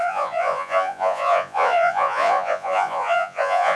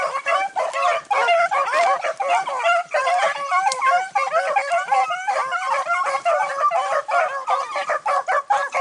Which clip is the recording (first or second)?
second